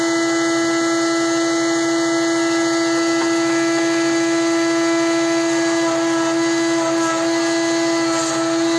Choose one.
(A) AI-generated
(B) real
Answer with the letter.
B